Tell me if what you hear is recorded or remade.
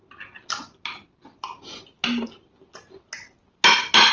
recorded